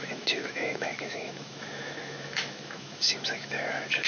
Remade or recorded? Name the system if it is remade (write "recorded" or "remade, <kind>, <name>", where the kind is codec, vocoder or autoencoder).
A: remade, autoencoder, DAC-VAE